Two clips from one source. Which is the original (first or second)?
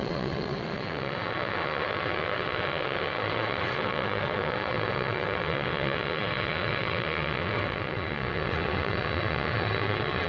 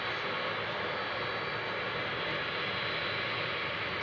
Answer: second